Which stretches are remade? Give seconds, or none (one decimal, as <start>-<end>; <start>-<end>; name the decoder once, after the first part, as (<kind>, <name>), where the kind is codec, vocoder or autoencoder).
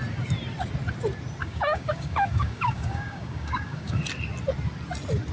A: 1.4-4.0 (codec, DAC)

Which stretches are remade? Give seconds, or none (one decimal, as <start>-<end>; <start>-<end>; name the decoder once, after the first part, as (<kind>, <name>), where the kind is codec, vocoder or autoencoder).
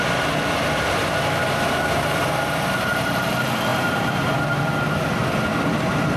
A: 1.0-3.3 (vocoder, BigVGAN v2); 3.7-4.6